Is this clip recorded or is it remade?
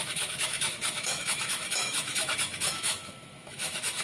remade